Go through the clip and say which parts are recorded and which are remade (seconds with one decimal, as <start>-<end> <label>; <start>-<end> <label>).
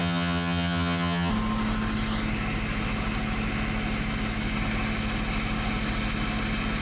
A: 0.0-1.3 remade; 1.3-6.8 recorded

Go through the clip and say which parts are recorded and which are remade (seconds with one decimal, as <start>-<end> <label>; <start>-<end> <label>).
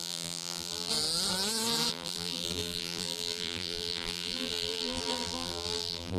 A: 0.0-0.9 remade; 0.9-1.9 recorded; 1.9-6.2 remade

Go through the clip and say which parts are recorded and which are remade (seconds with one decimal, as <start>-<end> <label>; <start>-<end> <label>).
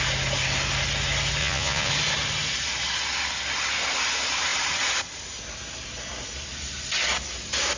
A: 0.0-1.4 recorded; 1.4-1.9 remade; 1.9-7.8 recorded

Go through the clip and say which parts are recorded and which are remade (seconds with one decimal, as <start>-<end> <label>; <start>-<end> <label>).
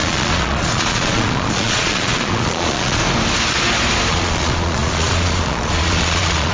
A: 0.0-3.0 remade; 3.0-4.1 recorded; 4.1-6.5 remade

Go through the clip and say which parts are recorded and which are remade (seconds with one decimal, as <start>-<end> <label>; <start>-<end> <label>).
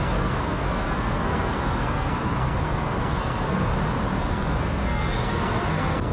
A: 0.0-3.7 remade; 3.7-4.2 recorded; 4.2-6.1 remade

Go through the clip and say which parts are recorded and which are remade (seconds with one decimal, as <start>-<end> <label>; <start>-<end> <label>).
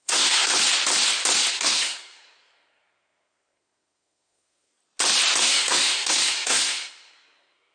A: 0.0-0.5 remade; 0.5-1.5 recorded; 1.5-4.7 remade; 4.7-5.4 recorded; 5.4-7.7 remade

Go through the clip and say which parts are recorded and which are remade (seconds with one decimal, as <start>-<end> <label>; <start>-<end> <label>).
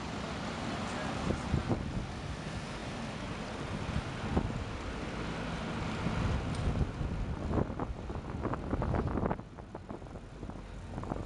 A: 0.0-11.3 recorded